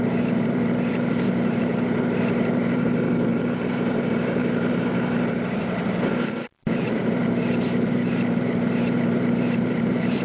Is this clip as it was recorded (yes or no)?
no